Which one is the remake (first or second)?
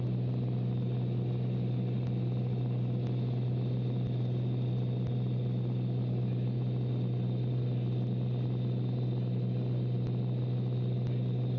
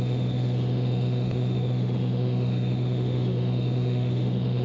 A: second